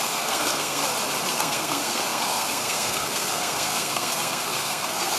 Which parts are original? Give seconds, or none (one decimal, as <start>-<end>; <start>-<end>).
0.8-1.3